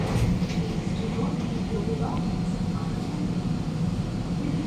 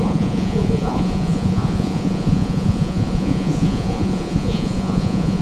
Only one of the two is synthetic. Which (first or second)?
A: second